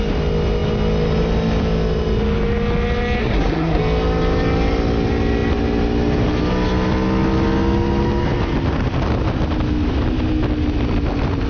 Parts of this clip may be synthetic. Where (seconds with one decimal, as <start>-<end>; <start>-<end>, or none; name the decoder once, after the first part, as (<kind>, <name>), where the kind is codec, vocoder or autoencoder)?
3.2-3.8 (codec, SNAC)